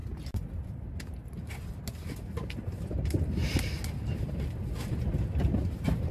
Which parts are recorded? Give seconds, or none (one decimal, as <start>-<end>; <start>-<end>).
0.0-6.1